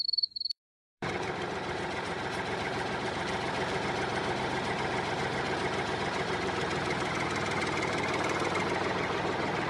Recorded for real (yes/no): no